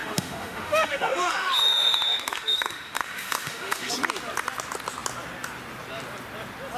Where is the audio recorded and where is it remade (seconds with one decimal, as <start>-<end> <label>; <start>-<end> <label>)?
0.0-3.9 remade; 3.9-6.8 recorded